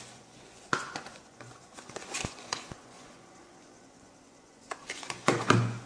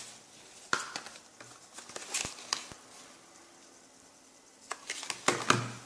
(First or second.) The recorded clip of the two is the second